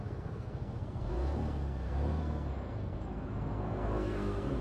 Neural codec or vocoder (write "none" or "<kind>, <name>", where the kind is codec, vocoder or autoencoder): codec, SNAC